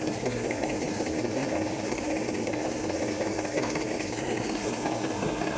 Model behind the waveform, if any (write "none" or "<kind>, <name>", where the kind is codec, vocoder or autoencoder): codec, SNAC